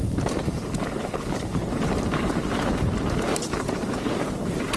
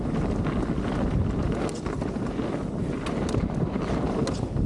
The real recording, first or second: second